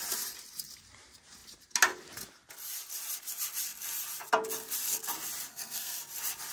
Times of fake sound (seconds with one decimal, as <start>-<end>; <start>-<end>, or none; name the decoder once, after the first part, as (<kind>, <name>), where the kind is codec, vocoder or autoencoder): 5.5-6.0 (codec, SNAC)